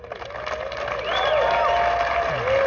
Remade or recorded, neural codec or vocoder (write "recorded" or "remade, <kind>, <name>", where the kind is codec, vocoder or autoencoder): recorded